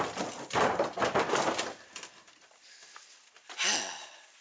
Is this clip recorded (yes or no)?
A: yes